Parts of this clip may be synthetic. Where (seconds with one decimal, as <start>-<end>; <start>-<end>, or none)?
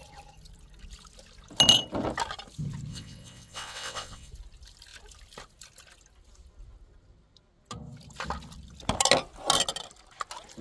2.9-4.3